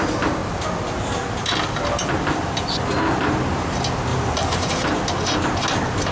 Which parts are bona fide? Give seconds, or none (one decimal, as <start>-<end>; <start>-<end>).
0.0-4.1; 4.7-6.1

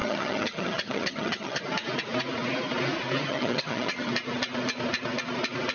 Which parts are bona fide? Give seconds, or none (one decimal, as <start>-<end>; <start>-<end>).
1.6-3.3; 4.1-5.7

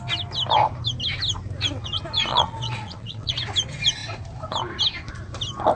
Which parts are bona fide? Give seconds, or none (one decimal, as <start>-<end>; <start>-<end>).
0.0-2.3; 3.3-5.8

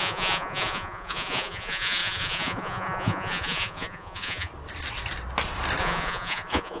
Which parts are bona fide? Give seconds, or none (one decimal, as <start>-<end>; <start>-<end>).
4.5-5.8